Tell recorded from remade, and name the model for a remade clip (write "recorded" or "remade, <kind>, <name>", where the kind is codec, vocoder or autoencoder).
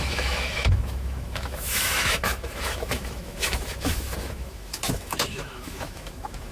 remade, autoencoder, DAC-VAE